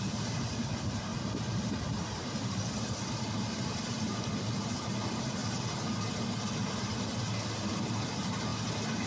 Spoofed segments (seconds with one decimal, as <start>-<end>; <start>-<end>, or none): 0.0-5.4; 7.6-8.5